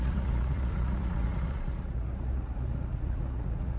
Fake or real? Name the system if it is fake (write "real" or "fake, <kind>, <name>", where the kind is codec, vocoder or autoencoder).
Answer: fake, vocoder, Vocos